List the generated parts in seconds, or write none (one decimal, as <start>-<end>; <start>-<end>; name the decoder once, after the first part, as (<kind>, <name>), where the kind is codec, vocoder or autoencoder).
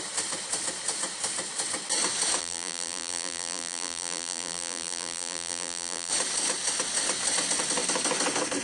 2.4-6.1 (vocoder, BigVGAN v2)